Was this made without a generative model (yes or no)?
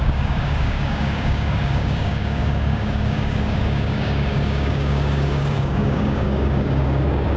no